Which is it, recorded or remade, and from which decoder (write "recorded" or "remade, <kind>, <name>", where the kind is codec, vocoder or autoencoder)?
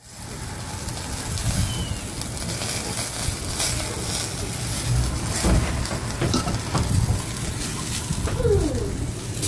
recorded